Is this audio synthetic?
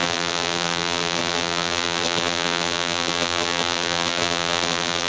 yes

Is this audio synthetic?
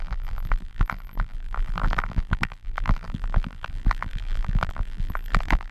yes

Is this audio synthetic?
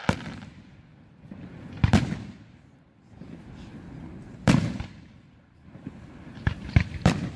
yes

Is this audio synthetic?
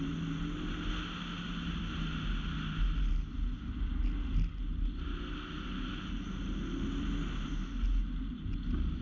no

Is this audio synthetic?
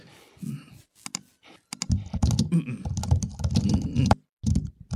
no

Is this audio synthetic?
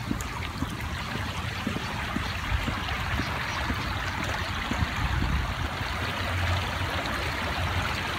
no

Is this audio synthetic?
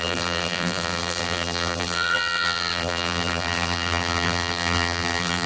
yes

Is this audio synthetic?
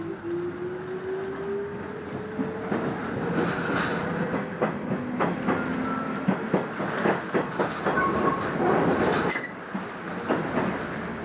no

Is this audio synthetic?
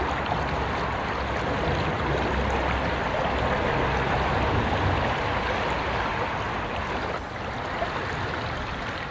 no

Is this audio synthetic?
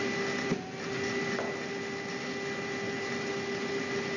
no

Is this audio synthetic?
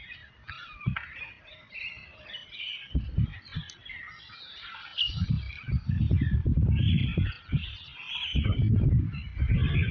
yes